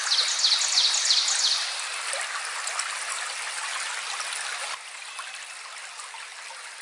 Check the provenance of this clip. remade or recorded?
recorded